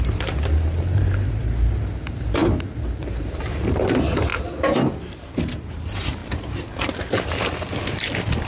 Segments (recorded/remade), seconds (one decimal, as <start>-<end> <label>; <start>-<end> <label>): 0.0-4.3 remade; 4.3-5.0 recorded; 5.0-6.2 remade; 6.2-8.5 recorded